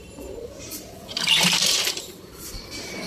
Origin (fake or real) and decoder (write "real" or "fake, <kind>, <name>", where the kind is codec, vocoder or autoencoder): fake, vocoder, BigVGAN v2